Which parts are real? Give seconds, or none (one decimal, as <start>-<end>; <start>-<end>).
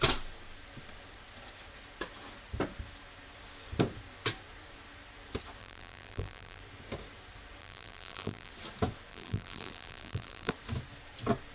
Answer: 0.0-5.6; 6.6-7.6; 8.5-9.1; 10.5-11.5